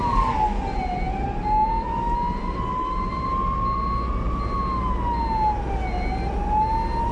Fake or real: real